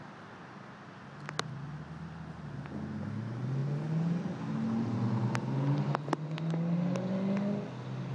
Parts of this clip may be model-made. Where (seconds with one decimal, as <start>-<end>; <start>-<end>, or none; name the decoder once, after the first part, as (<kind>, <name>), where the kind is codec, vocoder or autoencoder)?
none